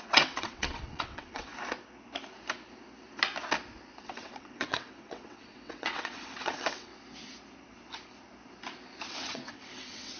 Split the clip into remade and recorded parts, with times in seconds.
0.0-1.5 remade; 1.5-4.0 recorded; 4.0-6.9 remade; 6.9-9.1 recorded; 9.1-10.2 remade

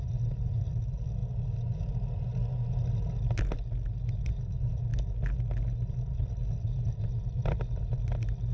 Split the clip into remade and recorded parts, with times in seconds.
0.0-8.5 recorded

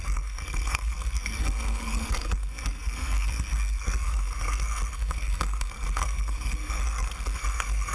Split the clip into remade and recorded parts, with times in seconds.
0.0-7.9 remade

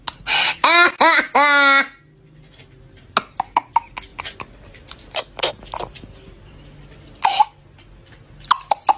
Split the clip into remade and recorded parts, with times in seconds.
0.0-4.1 recorded; 4.1-5.6 remade; 5.6-9.0 recorded